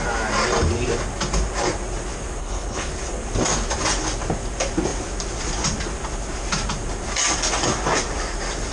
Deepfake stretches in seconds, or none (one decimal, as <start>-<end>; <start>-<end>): 2.4-2.9

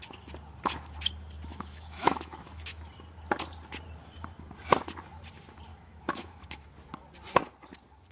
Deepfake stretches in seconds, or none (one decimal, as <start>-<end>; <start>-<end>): 1.5-2.8; 5.7-6.7

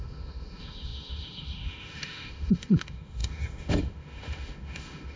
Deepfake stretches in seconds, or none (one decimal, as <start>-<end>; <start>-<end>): 0.0-5.2

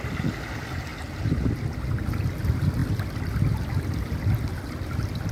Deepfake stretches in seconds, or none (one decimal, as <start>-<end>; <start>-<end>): none

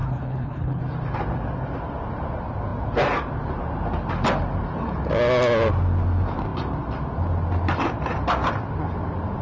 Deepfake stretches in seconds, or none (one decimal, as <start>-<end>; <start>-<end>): 0.0-0.8

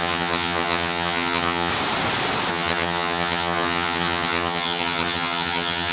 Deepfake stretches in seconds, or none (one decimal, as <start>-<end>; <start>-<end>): 0.0-1.7; 2.5-5.9

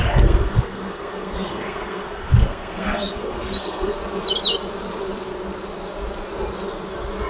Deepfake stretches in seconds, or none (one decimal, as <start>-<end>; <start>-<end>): 0.0-3.9

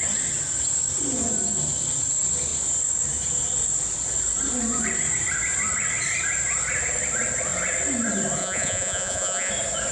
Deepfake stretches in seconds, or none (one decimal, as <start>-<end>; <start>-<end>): 8.4-9.5